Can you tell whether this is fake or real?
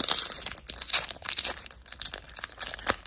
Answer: real